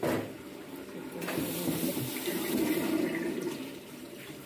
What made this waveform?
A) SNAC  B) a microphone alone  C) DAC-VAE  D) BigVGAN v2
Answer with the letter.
D